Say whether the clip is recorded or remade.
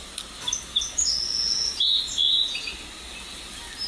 recorded